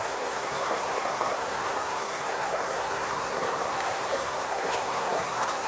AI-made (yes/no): yes